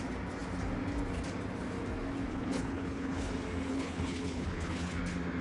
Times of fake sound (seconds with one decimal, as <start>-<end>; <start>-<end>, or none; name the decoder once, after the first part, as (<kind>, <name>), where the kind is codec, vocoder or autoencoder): 2.3-3.3 (codec, HILCodec); 3.7-5.0